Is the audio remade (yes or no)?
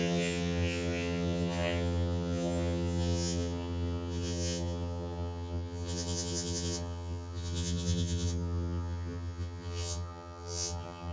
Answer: yes